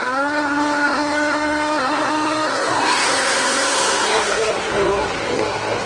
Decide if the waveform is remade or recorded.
remade